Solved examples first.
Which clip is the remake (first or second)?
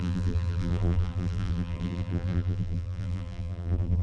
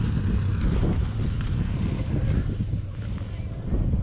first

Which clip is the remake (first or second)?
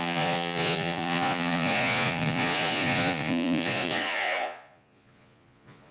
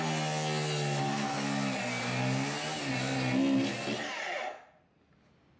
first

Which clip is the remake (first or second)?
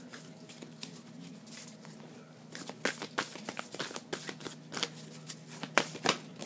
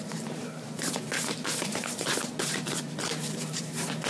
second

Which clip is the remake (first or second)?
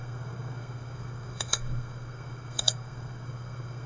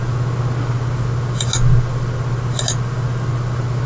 first